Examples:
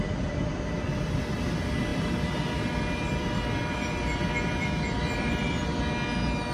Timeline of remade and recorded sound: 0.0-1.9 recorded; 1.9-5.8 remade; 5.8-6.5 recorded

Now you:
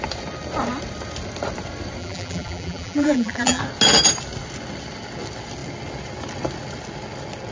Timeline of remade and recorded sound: 0.0-2.0 recorded; 2.0-3.6 remade; 3.6-7.5 recorded

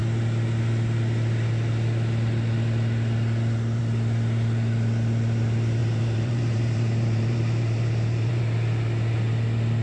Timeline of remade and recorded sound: 0.0-5.8 recorded; 5.8-8.4 remade; 8.4-9.8 recorded

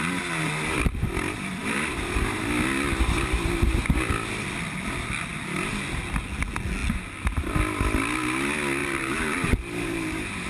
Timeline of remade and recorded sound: 0.0-1.6 recorded; 1.6-2.4 remade; 2.4-8.8 recorded; 8.8-10.5 remade

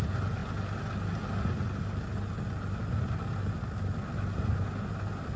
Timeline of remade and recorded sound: 0.0-5.4 recorded

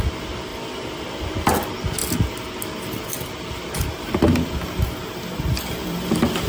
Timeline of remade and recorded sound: 0.0-0.5 recorded; 0.5-1.0 remade; 1.0-5.5 recorded; 5.5-6.5 remade

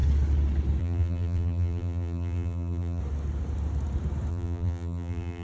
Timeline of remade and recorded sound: 0.0-0.8 recorded; 0.8-3.0 remade; 3.0-4.3 recorded; 4.3-5.4 remade

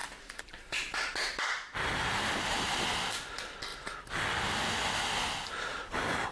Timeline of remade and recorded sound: 0.0-2.8 remade; 2.8-6.3 recorded